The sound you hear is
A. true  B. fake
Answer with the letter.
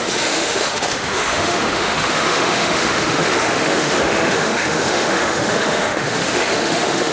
B